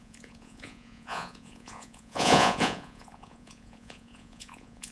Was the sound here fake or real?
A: fake